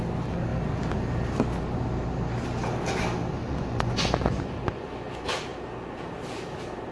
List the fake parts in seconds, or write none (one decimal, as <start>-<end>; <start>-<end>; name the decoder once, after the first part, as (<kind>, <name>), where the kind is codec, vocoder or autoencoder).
3.4-4.9 (vocoder, Vocos)